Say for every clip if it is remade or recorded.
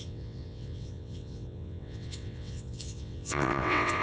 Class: remade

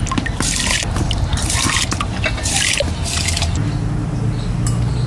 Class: recorded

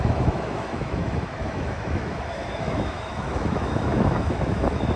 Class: remade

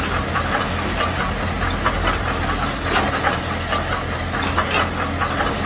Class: recorded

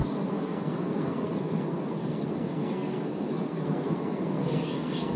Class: remade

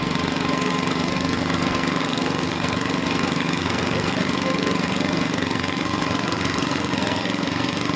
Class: remade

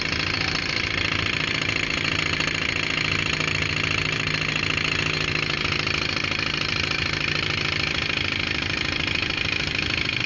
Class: recorded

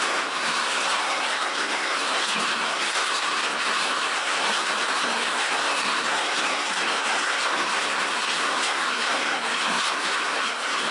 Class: remade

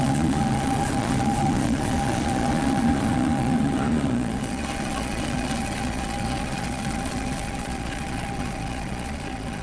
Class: remade